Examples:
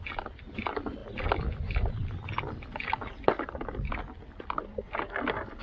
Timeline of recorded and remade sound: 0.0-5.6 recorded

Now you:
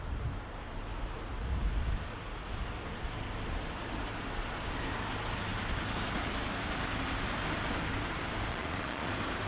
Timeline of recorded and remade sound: 0.0-8.5 recorded; 8.5-9.1 remade; 9.1-9.5 recorded

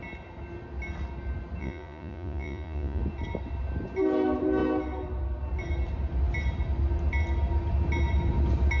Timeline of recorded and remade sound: 0.0-1.6 recorded; 1.6-3.0 remade; 3.0-8.8 recorded

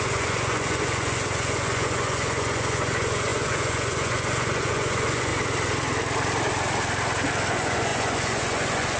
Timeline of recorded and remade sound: 0.0-5.3 remade; 5.3-7.5 recorded; 7.5-9.0 remade

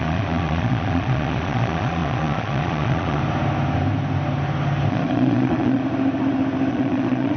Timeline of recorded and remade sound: 0.0-3.2 remade; 3.2-4.9 recorded; 4.9-5.8 remade; 5.8-6.7 recorded; 6.7-7.4 remade